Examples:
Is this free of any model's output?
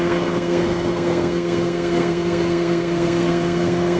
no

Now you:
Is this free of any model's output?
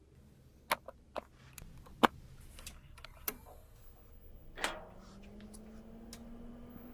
yes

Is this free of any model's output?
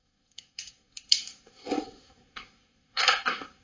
no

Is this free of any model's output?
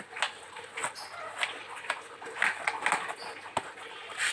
yes